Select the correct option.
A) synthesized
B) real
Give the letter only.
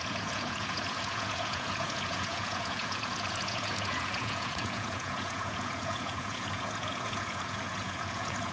A